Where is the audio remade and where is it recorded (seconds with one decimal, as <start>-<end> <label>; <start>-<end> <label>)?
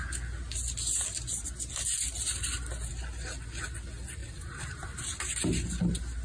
0.0-4.2 recorded; 4.2-5.0 remade; 5.0-6.2 recorded